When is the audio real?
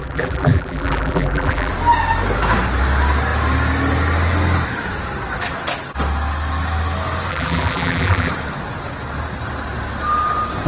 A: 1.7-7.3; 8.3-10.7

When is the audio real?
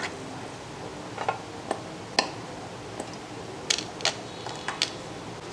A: 0.0-5.5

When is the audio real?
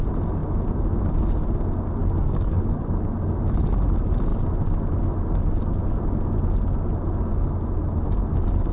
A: 0.0-2.0; 3.1-8.7